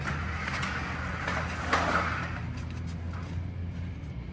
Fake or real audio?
real